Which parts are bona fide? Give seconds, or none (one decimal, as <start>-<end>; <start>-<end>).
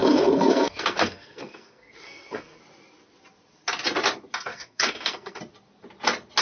2.6-4.5; 5.4-6.4